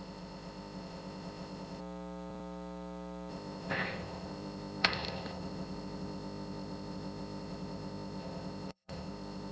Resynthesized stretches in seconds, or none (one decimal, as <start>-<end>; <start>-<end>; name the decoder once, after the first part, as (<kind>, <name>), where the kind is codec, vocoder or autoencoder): 0.0-1.8 (codec, ZipCodec); 3.3-9.5